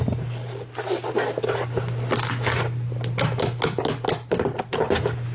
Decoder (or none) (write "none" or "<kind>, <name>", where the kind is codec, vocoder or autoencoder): none